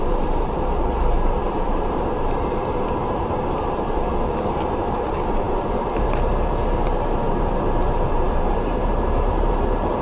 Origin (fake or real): fake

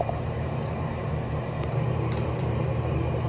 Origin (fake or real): fake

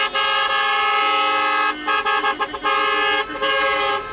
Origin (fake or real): real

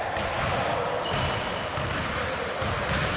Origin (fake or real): fake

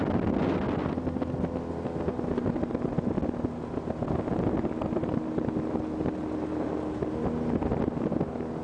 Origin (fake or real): real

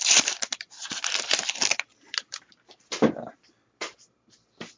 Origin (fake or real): fake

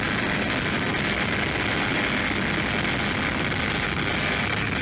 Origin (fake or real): real